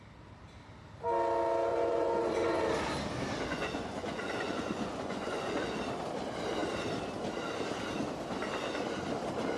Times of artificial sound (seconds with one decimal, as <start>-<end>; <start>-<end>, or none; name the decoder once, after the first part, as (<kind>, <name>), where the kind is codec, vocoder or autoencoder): 1.7-2.6 (vocoder, Vocos); 3.5-5.8

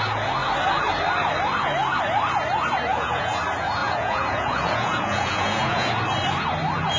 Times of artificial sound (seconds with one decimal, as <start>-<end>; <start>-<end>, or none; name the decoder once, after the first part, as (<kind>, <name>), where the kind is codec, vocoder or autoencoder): 2.9-3.4 (vocoder, Vocos); 3.8-5.9

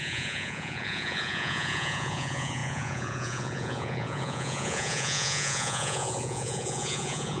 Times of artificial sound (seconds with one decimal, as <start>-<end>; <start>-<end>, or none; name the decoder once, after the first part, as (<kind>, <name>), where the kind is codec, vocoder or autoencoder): 0.0-7.4 (vocoder, Vocos)

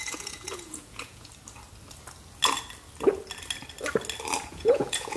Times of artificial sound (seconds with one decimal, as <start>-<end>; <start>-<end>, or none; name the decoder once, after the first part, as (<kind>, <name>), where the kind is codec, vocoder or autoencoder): 0.0-1.3 (vocoder, Vocos); 4.4-5.2

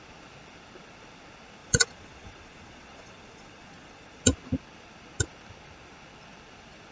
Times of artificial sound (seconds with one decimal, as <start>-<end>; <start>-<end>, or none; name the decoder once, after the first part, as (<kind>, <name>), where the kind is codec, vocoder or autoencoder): 1.6-4.2 (vocoder, Vocos)

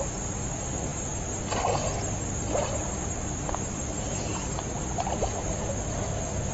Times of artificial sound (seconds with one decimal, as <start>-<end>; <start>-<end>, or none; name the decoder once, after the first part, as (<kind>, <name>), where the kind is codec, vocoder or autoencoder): none

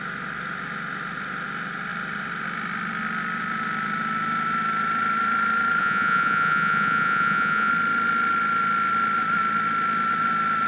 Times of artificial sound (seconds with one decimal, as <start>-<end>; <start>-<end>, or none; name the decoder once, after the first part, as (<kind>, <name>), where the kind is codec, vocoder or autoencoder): 5.8-7.7 (vocoder, Vocos)

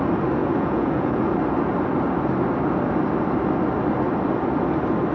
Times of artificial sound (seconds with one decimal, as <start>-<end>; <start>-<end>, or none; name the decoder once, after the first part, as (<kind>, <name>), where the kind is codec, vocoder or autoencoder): 0.4-1.3 (vocoder, Vocos)